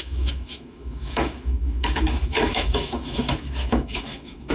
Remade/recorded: remade